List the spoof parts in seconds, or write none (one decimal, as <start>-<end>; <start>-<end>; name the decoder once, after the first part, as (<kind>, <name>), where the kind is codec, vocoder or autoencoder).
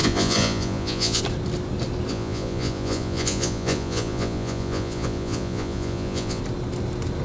0.0-1.2 (vocoder, Vocos); 2.1-6.4